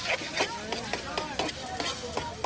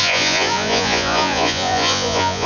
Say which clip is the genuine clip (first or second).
first